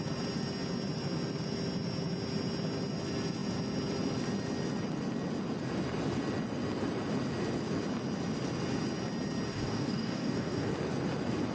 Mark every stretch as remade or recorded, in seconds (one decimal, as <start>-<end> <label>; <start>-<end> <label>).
0.0-9.5 recorded; 9.5-10.7 remade; 10.7-11.5 recorded